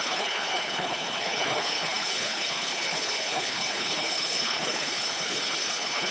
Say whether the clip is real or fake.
fake